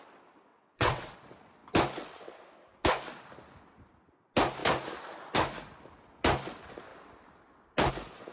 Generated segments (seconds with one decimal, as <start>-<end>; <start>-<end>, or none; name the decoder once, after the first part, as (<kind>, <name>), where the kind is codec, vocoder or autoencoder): 0.5-1.2 (vocoder, WaveNeXt)